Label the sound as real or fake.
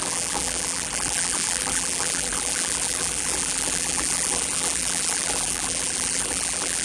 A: fake